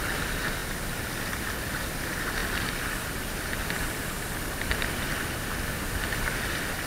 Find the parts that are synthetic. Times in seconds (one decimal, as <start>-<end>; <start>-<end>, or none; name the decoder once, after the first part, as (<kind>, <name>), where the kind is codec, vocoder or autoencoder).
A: none